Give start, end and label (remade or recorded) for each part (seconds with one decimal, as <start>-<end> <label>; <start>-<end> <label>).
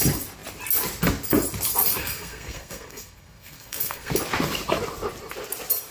0.0-2.0 recorded; 2.0-4.1 remade; 4.1-5.9 recorded